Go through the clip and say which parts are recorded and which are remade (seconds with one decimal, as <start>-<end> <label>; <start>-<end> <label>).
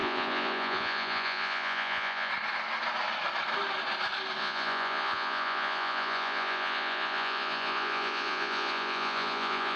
0.0-2.3 remade; 2.3-4.4 recorded; 4.4-9.8 remade